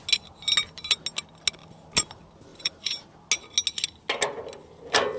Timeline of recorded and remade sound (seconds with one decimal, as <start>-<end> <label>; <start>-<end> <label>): 0.0-2.5 recorded; 2.5-3.1 remade; 3.1-5.2 recorded